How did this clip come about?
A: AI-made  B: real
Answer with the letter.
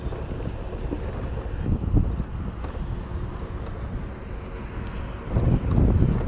B